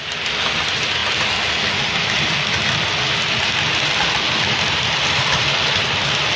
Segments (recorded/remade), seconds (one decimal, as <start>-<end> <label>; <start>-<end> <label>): 0.0-6.4 recorded